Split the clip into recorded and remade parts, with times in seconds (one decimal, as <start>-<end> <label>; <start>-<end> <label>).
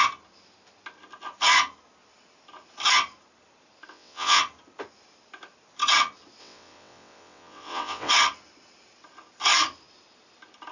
0.0-3.9 recorded; 3.9-4.4 remade; 4.4-6.4 recorded; 6.4-8.1 remade; 8.1-10.7 recorded